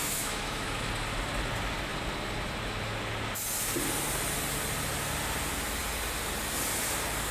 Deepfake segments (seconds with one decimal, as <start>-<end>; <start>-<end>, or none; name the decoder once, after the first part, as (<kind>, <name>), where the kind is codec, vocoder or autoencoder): 0.0-0.9 (autoencoder, DAC-VAE)